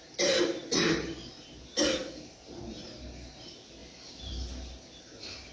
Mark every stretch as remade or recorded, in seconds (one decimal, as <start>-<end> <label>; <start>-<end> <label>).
0.0-5.5 recorded